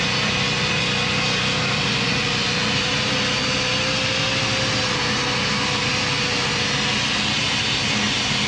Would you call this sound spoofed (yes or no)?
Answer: no